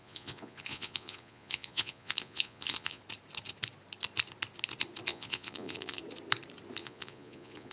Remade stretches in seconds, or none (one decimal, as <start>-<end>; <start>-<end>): 0.0-3.0; 5.1-6.0; 6.8-7.7